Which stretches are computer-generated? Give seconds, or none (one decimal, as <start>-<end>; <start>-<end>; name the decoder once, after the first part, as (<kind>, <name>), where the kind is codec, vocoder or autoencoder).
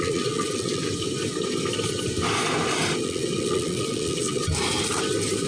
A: 0.0-0.8 (vocoder, Vocos); 3.0-4.4